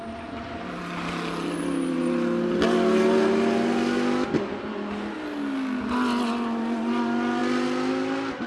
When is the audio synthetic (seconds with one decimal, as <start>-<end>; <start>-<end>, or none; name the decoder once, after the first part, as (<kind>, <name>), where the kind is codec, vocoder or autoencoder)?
none